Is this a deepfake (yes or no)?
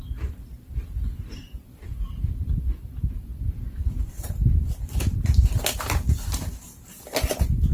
yes